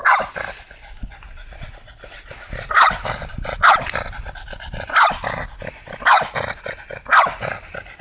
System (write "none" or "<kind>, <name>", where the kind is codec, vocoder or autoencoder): none